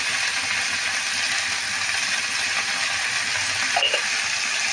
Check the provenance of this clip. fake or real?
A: real